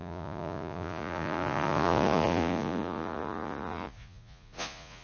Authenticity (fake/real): fake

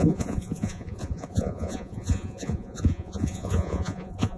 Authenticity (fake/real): fake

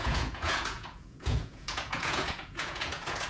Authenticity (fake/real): fake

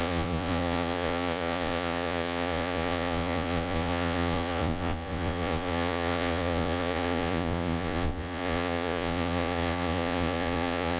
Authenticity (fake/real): fake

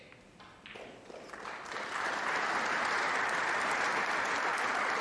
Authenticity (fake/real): real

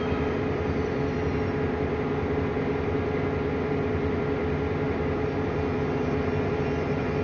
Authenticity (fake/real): real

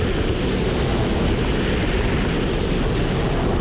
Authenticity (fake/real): real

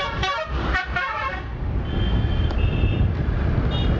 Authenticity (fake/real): real